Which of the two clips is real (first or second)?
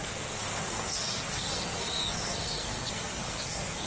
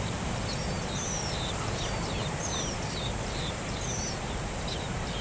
second